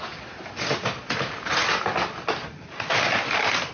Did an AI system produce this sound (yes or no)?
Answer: no